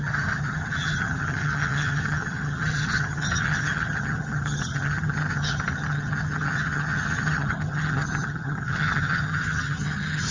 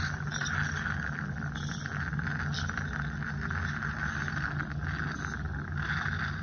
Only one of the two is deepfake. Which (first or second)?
first